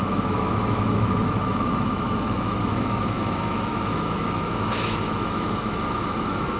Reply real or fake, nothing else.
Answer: fake